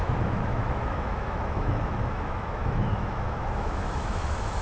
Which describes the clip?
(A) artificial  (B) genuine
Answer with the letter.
A